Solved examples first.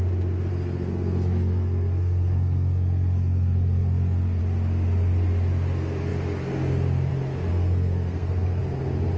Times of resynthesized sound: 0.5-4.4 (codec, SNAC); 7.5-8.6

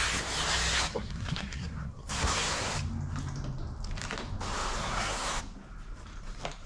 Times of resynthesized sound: 0.9-2.7 (codec, SNAC); 4.8-5.4

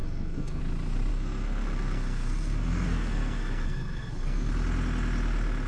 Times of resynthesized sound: 0.0-0.6 (codec, SNAC); 1.1-4.5

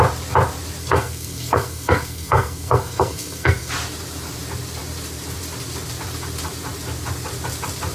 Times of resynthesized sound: 0.8-3.7 (codec, SNAC)

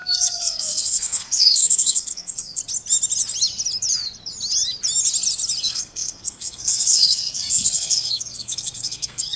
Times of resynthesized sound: 0.0-2.6 (codec, SNAC); 5.6-9.4

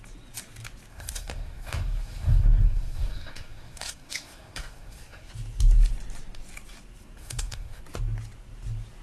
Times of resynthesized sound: 0.9-5.3 (codec, SNAC); 7.2-7.8